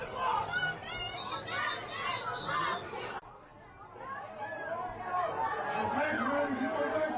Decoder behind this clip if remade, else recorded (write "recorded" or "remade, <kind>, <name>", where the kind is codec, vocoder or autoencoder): recorded